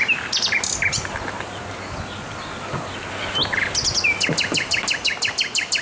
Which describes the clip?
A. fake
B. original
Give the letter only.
B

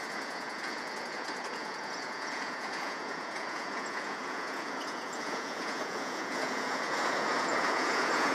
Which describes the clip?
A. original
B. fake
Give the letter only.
B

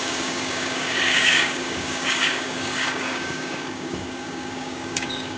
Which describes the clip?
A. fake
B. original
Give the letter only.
A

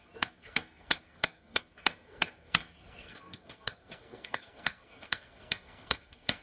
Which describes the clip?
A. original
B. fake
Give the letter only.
B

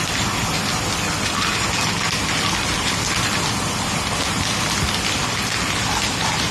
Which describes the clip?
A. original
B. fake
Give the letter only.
A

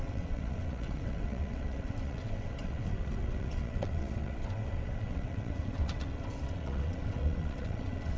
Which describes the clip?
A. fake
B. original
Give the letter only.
A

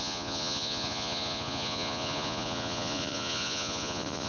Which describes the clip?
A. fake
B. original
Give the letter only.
A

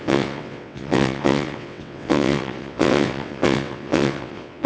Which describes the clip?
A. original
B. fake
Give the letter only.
B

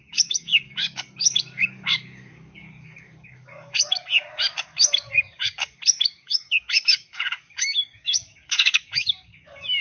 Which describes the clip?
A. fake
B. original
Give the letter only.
A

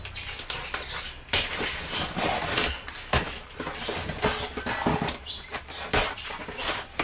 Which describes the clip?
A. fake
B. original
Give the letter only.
B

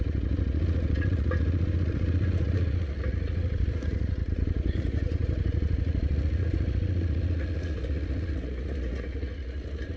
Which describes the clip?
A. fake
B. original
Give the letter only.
A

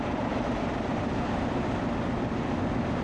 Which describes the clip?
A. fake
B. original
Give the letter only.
B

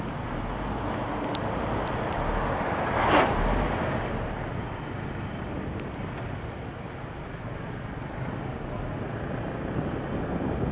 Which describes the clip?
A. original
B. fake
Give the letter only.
A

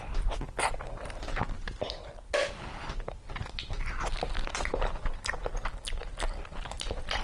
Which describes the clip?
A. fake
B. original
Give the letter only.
B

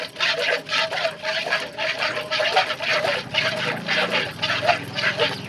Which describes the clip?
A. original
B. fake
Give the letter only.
A